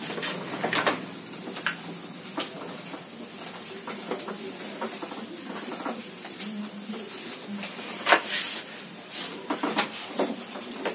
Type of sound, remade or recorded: recorded